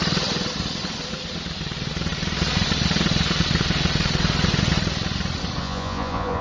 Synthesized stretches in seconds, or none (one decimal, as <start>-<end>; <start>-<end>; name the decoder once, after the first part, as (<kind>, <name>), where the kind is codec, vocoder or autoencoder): 5.6-6.4 (vocoder, Vocos)